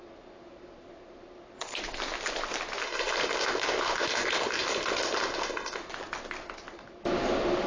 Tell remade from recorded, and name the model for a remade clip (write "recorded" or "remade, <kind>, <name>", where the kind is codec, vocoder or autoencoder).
recorded